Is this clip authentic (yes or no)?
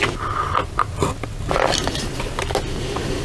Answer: yes